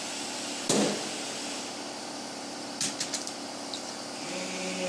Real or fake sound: real